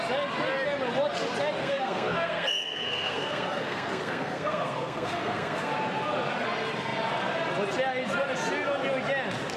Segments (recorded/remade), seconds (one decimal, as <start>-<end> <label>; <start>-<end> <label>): 0.0-1.6 recorded; 1.6-5.7 remade; 5.7-9.6 recorded